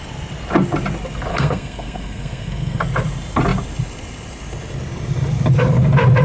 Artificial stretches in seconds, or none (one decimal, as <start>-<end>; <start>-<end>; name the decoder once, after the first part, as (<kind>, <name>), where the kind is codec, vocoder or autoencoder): 1.3-2.8 (codec, SNAC)